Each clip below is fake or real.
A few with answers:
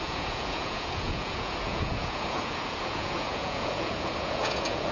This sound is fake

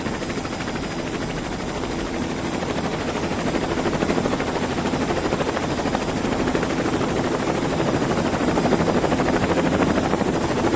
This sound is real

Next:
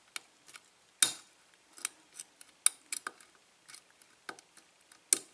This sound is real